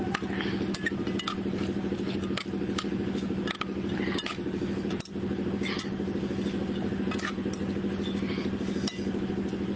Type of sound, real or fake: real